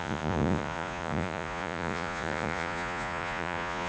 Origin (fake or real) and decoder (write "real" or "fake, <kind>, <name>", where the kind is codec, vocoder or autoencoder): fake, vocoder, Vocos